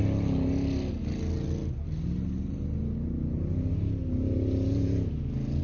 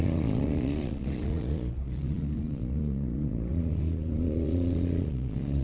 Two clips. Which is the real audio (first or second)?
first